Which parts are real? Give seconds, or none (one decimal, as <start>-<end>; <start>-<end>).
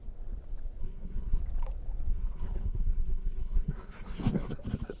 0.0-0.8; 1.4-2.1; 4.5-5.0